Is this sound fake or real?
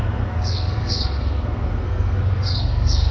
fake